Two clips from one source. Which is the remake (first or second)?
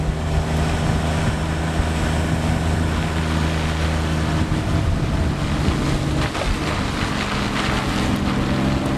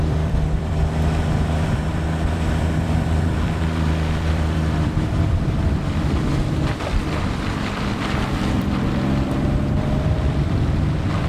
second